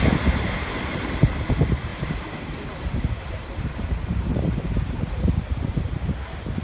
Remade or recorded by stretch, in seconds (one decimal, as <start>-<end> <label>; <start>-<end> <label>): 0.0-1.9 recorded; 1.9-5.9 remade; 5.9-6.6 recorded